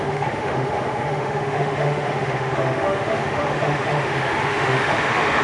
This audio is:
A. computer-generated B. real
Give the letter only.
A